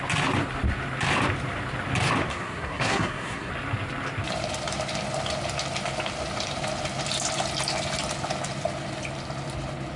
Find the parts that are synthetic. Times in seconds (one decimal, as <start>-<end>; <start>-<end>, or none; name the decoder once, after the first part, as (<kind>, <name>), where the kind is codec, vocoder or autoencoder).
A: 2.3-3.5 (codec, SNAC)